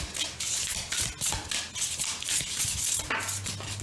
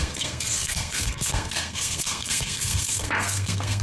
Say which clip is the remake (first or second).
second